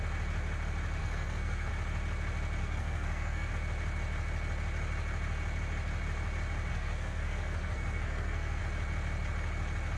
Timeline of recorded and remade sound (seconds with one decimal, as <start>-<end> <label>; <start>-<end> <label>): 0.0-1.0 recorded; 1.0-1.7 remade; 1.7-2.6 recorded; 2.6-3.5 remade; 3.5-6.7 recorded; 6.7-8.6 remade; 8.6-10.0 recorded